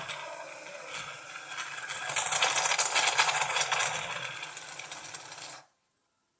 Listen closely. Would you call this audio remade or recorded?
recorded